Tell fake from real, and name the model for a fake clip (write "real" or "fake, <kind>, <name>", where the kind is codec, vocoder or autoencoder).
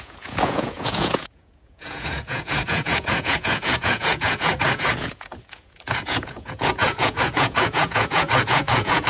fake, vocoder, Vocos